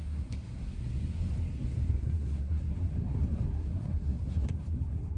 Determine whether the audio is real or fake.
fake